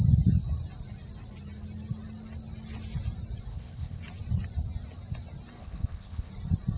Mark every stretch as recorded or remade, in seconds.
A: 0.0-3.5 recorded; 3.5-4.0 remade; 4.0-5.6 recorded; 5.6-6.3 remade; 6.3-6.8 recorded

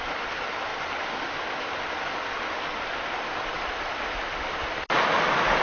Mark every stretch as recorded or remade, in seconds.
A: 0.0-5.6 recorded

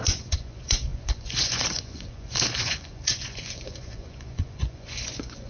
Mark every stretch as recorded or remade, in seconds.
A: 0.0-5.5 remade

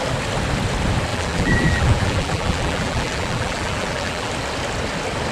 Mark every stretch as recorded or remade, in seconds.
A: 0.0-1.1 recorded; 1.1-4.3 remade; 4.3-5.3 recorded

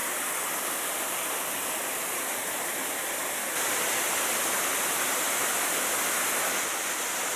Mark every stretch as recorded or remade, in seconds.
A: 0.0-7.4 recorded

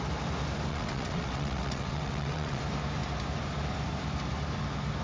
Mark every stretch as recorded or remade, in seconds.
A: 0.0-0.7 recorded; 0.7-2.6 remade; 2.6-5.0 recorded

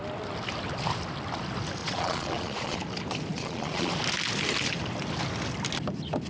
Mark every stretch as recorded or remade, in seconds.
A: 0.0-1.8 recorded; 1.8-2.8 remade; 2.8-3.3 recorded; 3.3-3.9 remade; 3.9-6.3 recorded

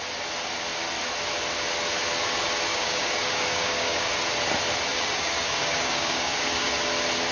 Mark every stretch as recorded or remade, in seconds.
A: 0.0-2.7 recorded; 2.7-4.1 remade; 4.1-4.9 recorded; 4.9-6.7 remade; 6.7-7.3 recorded